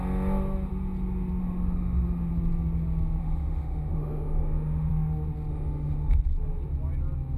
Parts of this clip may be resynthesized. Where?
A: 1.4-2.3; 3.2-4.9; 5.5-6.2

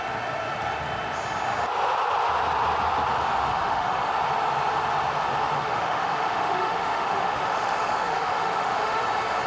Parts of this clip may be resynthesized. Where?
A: 3.5-4.1; 5.6-9.0

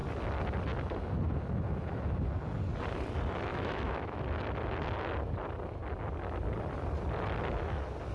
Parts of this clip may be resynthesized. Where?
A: 3.5-4.2

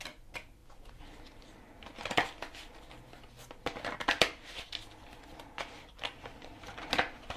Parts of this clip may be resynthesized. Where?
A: none

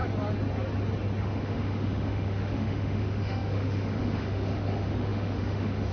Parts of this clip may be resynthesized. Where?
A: 1.2-5.9

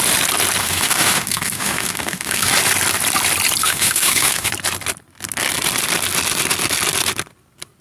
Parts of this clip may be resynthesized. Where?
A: 0.6-2.5; 3.6-4.5

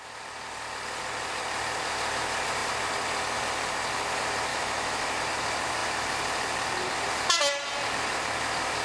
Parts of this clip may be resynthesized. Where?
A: 4.5-5.2